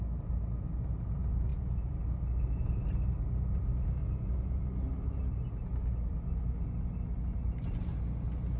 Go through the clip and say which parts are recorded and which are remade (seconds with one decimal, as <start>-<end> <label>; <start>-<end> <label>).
0.0-1.5 recorded; 1.5-2.0 remade; 2.0-4.0 recorded; 4.0-4.6 remade; 4.6-8.6 recorded